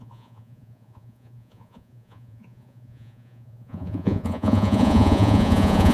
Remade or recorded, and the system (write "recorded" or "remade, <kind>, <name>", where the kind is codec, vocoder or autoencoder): remade, vocoder, Vocos